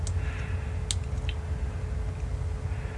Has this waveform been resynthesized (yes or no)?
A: no